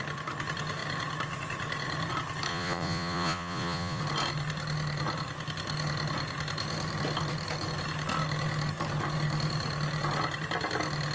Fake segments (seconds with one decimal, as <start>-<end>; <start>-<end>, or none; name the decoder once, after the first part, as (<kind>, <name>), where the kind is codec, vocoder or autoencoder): 2.5-4.0 (vocoder, Vocos)